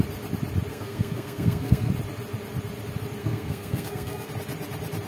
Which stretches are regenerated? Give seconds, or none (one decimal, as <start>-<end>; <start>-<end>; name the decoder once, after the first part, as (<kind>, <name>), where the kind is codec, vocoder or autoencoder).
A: 0.7-1.9 (codec, SNAC); 3.2-4.3